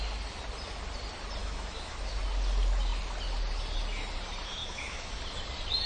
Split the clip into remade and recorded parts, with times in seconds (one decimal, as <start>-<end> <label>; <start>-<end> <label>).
0.0-1.4 recorded; 1.4-2.1 remade; 2.1-4.6 recorded; 4.6-5.1 remade; 5.1-5.9 recorded